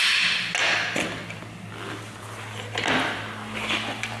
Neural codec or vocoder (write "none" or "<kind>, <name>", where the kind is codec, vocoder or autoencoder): none